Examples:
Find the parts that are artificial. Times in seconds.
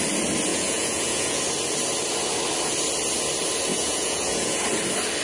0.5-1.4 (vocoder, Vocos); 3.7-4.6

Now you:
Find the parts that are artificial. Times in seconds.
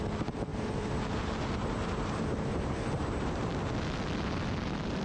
0.5-3.5 (vocoder, BigVGAN v2)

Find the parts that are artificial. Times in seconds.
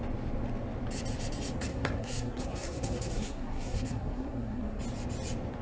1.7-4.8 (codec, SNAC)